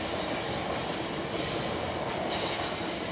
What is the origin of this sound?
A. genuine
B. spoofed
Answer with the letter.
A